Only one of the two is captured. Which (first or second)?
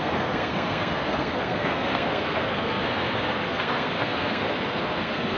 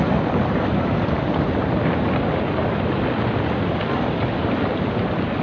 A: second